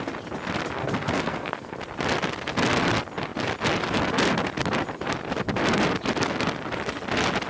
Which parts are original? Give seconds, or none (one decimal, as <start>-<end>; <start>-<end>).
0.0-0.8; 1.8-7.5